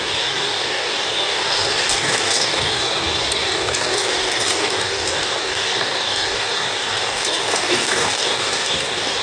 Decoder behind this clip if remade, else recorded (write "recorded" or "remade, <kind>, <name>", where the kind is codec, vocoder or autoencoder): remade, codec, DAC